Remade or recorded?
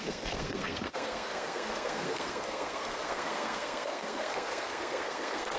remade